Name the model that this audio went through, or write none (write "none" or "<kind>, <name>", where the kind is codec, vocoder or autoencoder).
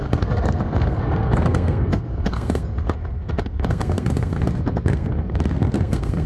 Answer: codec, SNAC